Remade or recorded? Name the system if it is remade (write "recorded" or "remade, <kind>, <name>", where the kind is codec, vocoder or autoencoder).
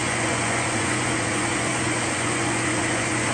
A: remade, vocoder, Vocos